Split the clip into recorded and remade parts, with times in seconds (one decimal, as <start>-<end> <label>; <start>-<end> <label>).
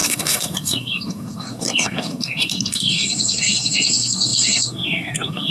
0.0-5.5 remade